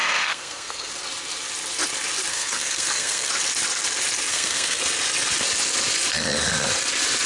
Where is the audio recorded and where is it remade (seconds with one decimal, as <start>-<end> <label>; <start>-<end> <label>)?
0.0-0.9 remade; 0.9-2.3 recorded; 2.3-3.3 remade; 3.3-4.3 recorded; 4.3-4.8 remade; 4.8-7.3 recorded